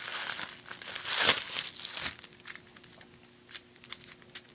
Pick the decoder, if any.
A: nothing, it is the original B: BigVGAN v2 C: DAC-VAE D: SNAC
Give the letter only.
A